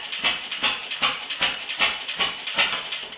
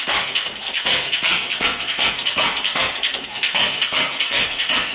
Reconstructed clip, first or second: second